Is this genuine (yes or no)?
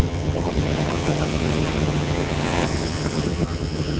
no